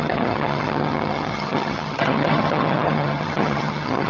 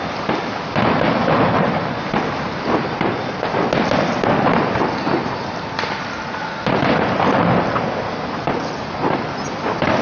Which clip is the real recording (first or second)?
second